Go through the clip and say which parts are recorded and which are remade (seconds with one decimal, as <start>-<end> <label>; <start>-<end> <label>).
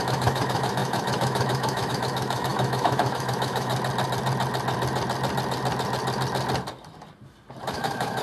0.0-3.7 remade; 3.7-7.7 recorded; 7.7-8.2 remade